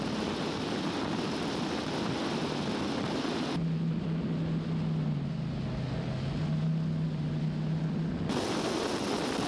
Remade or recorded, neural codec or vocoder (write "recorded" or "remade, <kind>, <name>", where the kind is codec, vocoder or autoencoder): recorded